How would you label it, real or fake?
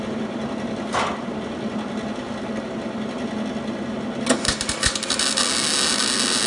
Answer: real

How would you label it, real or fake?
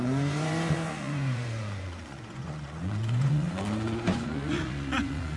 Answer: fake